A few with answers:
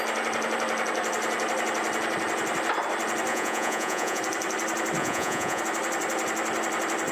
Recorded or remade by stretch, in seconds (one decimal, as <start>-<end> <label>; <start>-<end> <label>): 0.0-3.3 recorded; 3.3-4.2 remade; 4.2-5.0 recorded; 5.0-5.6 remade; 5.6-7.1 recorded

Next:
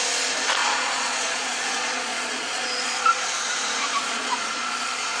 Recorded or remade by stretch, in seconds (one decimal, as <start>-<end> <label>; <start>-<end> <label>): 0.0-0.6 recorded; 0.6-3.2 remade; 3.2-3.8 recorded; 3.8-5.2 remade

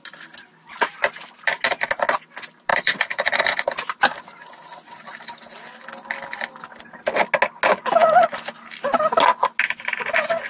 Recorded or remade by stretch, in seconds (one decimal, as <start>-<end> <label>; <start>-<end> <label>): 0.0-2.7 recorded; 2.7-5.2 remade; 5.2-10.5 recorded